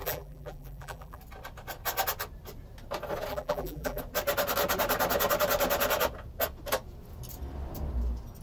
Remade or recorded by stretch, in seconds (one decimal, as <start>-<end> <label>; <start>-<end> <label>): 0.0-1.2 remade; 1.2-3.3 recorded; 3.3-4.0 remade; 4.0-8.4 recorded